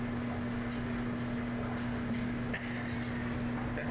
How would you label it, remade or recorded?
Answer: recorded